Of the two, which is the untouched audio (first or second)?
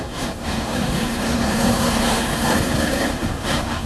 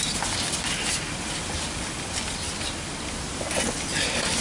second